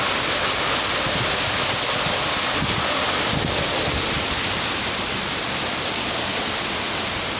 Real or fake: real